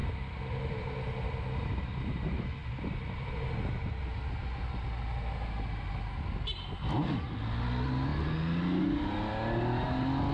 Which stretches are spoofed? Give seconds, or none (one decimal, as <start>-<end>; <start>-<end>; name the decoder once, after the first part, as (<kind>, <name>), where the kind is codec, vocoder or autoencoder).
none